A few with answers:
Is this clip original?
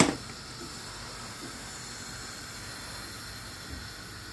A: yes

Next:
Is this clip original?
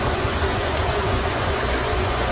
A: no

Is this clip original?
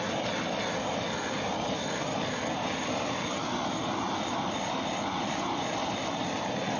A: yes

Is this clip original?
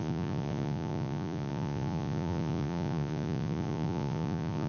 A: no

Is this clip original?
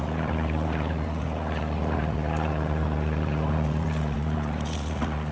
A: no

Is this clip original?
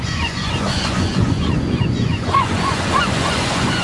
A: no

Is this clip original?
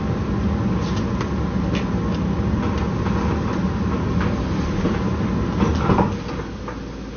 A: yes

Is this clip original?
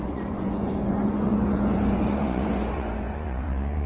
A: no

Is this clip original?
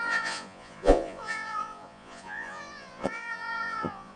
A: no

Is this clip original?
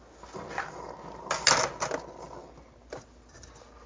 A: yes